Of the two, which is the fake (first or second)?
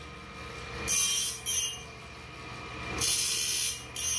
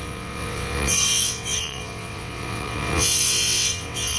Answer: second